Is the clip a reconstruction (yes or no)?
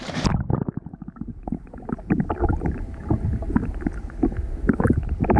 no